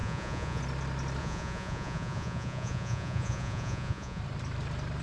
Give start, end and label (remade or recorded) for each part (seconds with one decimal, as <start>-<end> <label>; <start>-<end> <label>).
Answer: 0.0-0.6 remade; 0.6-1.2 recorded; 1.2-4.2 remade; 4.2-5.0 recorded